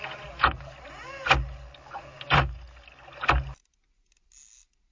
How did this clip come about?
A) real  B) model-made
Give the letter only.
A